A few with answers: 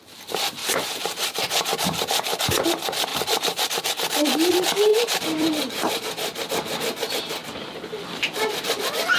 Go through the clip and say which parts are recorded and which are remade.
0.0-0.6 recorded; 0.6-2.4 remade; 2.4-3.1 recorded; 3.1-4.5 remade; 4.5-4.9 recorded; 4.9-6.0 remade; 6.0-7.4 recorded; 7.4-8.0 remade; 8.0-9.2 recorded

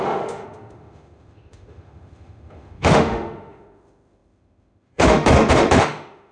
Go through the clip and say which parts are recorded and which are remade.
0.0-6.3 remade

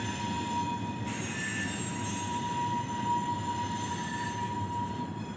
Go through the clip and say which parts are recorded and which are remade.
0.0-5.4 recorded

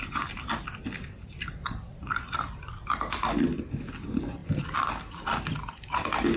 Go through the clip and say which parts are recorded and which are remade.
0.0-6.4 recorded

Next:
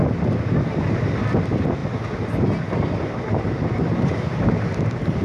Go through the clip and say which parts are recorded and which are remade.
0.0-5.2 recorded

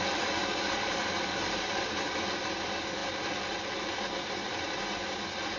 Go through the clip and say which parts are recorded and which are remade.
0.0-5.6 recorded